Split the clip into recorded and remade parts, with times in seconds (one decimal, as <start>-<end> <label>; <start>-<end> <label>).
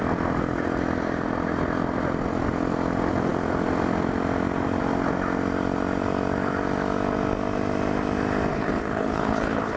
0.0-8.5 recorded; 8.5-9.8 remade